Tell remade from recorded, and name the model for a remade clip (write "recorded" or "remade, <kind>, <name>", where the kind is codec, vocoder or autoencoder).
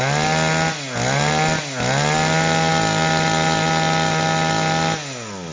recorded